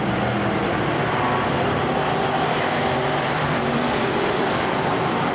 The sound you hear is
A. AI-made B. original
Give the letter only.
A